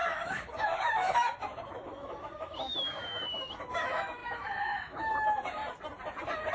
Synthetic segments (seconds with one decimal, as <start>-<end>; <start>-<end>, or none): 0.0-5.6